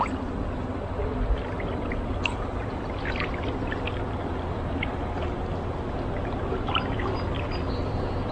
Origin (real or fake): real